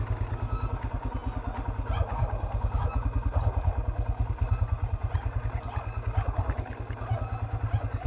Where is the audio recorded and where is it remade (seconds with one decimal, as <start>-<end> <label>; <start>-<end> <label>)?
0.0-8.1 recorded